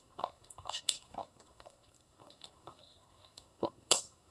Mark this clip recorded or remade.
remade